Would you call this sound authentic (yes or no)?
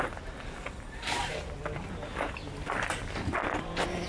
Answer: yes